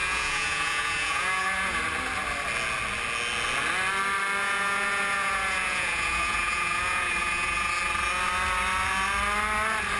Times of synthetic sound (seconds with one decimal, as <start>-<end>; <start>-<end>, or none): 0.0-1.8; 4.4-7.7